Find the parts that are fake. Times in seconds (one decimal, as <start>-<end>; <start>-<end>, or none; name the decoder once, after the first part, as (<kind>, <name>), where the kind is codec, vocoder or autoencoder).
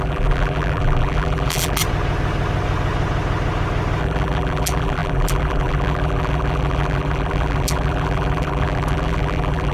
0.0-1.8 (vocoder, BigVGAN v2); 4.0-9.7